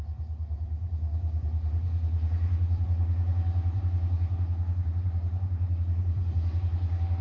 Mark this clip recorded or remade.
remade